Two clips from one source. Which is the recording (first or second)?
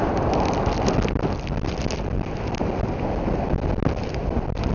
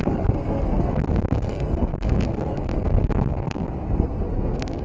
first